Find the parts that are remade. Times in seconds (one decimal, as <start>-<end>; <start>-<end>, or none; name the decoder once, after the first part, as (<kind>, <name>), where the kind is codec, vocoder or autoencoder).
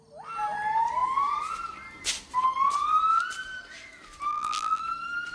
4.3-4.8 (vocoder, BigVGAN v2)